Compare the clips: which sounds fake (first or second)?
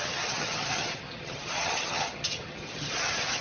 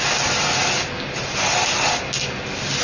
first